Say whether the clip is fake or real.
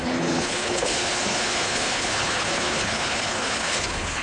fake